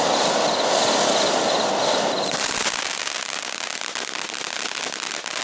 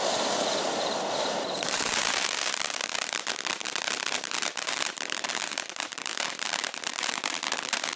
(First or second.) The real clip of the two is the first